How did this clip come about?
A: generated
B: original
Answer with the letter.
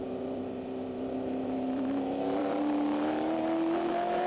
A